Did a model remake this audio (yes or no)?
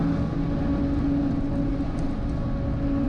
no